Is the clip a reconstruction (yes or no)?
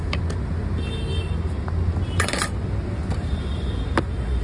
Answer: no